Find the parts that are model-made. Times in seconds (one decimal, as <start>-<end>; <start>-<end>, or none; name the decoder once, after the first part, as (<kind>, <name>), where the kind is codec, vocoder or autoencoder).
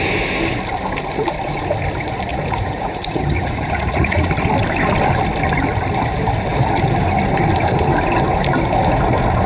2.3-4.3 (vocoder, Vocos)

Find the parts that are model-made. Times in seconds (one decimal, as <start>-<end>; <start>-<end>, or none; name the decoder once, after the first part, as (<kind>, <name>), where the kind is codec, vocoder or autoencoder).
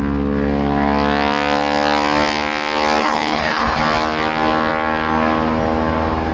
3.0-3.8 (codec, HILCodec)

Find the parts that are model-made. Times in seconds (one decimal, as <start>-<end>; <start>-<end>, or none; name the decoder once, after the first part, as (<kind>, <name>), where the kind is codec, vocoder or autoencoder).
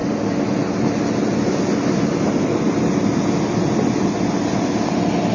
none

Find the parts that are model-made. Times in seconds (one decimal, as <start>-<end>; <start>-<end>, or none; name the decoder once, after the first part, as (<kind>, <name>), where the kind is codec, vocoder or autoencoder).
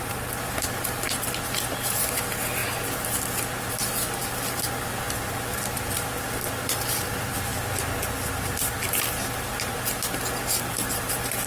4.2-4.9 (vocoder, BigVGAN v2)